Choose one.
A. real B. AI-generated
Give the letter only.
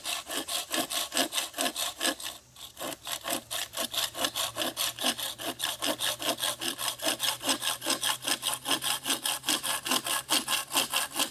A